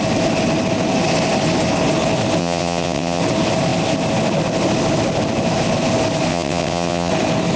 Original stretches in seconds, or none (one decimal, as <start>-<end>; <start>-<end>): 0.0-2.4; 3.2-6.3; 7.1-7.6